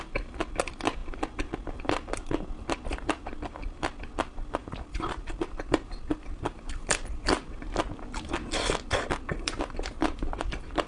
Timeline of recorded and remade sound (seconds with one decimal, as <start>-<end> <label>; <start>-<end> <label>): 0.0-4.6 recorded; 4.6-7.5 remade; 7.5-9.3 recorded; 9.3-10.9 remade